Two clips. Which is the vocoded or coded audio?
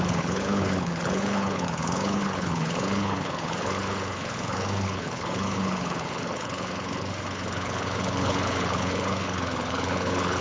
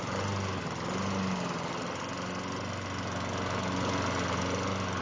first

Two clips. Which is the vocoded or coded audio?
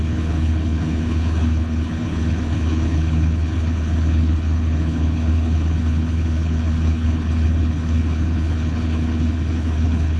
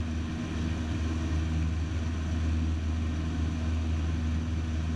first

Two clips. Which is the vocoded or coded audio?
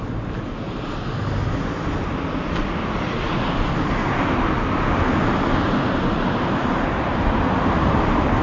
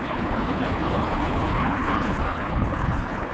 second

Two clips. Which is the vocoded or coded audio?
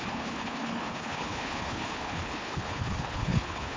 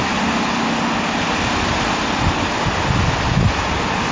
first